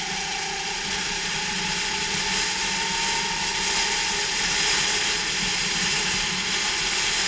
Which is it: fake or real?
real